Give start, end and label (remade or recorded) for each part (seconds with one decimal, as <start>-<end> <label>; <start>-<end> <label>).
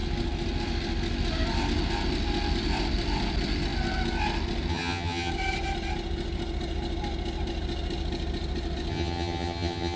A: 0.0-4.7 recorded; 4.7-5.3 remade; 5.3-8.9 recorded; 8.9-10.0 remade